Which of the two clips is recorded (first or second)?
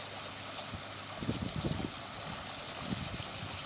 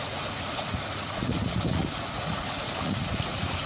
first